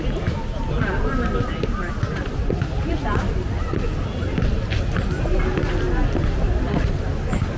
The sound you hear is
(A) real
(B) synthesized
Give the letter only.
A